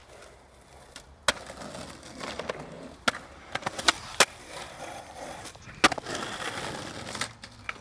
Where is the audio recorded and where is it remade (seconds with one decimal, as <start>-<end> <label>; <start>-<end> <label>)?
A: 0.0-7.8 recorded